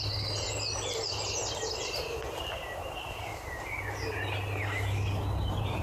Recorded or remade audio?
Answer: recorded